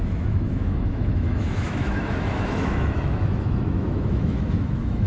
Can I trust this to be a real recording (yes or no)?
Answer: no